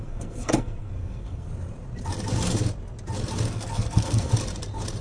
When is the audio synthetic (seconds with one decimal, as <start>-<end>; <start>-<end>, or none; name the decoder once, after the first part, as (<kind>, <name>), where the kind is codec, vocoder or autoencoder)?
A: 0.0-1.5 (codec, SNAC); 3.5-4.3